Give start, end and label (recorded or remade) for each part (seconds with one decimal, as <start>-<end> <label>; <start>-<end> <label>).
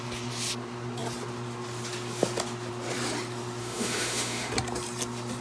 0.0-3.6 recorded; 3.6-4.5 remade; 4.5-5.4 recorded